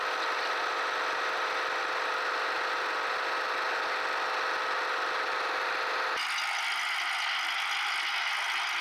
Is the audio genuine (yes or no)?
yes